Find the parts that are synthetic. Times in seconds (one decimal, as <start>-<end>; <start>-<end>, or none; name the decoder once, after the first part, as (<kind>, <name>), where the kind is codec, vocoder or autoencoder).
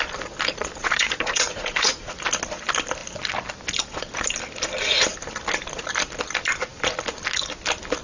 0.8-2.1 (vocoder, Vocos)